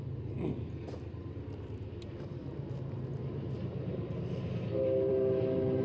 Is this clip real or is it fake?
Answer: fake